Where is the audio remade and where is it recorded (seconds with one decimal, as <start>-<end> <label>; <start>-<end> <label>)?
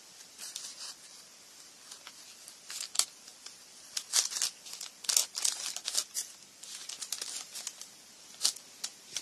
0.0-9.2 recorded